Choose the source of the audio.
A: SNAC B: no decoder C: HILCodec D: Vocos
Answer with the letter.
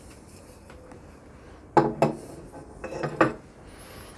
B